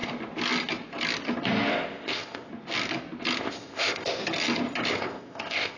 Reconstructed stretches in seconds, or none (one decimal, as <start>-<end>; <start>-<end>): 1.7-2.5; 3.4-4.2; 4.9-5.8